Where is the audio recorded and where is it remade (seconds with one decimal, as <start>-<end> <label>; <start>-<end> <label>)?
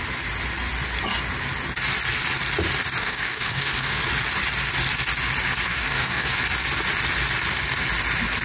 0.0-3.0 recorded; 3.0-4.0 remade; 4.0-5.7 recorded; 5.7-6.4 remade; 6.4-8.4 recorded